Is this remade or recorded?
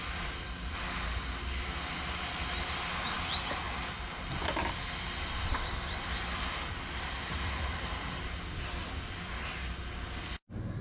recorded